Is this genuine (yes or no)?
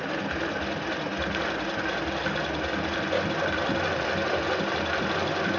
yes